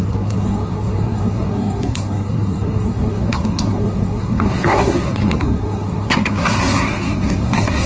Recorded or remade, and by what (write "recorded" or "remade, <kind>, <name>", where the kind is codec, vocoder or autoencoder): remade, codec, SNAC